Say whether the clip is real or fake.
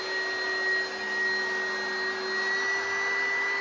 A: real